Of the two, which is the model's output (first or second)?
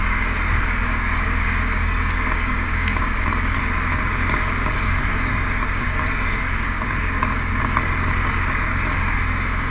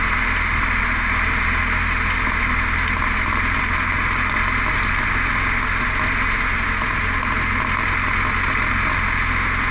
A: first